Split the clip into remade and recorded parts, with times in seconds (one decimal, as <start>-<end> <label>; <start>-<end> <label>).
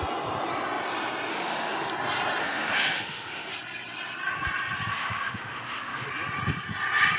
0.0-1.3 recorded; 1.3-1.9 remade; 1.9-2.4 recorded; 2.4-3.5 remade; 3.5-4.9 recorded; 4.9-6.1 remade; 6.1-7.2 recorded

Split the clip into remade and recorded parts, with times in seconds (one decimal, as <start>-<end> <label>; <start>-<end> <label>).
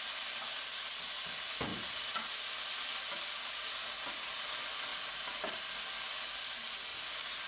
0.0-6.9 recorded; 6.9-7.5 remade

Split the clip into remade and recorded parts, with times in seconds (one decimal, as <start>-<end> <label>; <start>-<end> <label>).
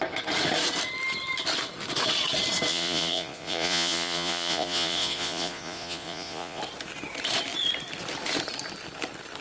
0.0-2.7 recorded; 2.7-6.6 remade; 6.6-9.4 recorded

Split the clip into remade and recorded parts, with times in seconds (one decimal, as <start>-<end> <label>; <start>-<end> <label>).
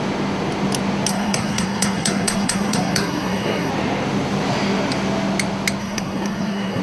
0.0-1.1 recorded; 1.1-3.7 remade; 3.7-5.8 recorded; 5.8-6.8 remade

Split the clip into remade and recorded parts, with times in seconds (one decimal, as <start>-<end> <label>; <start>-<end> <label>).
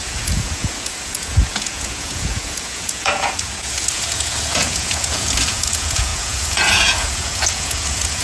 0.0-8.2 remade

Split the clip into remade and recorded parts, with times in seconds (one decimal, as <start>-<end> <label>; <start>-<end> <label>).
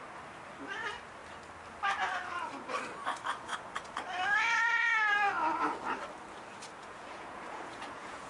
0.0-6.8 recorded; 6.8-8.3 remade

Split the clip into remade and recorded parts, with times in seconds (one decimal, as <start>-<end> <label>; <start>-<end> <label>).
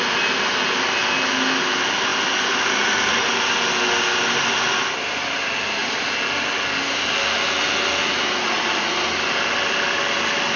0.0-10.6 recorded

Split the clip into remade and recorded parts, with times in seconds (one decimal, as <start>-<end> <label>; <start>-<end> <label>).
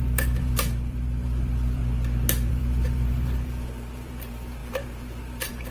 0.0-1.8 remade; 1.8-2.5 recorded; 2.5-5.7 remade